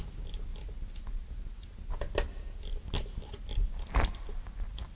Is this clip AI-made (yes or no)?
no